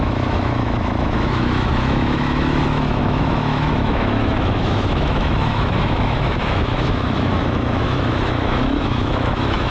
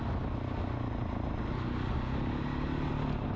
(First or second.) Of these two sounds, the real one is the second